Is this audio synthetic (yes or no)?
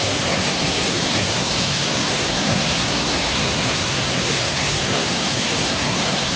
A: yes